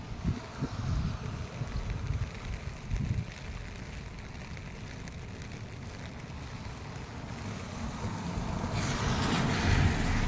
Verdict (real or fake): real